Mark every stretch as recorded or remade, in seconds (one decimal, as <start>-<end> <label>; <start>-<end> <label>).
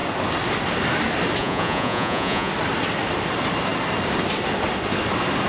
0.0-1.4 recorded; 1.4-2.5 remade; 2.5-5.5 recorded